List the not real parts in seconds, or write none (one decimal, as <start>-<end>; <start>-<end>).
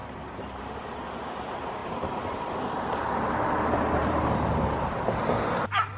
0.0-0.6; 1.8-2.8; 4.0-4.8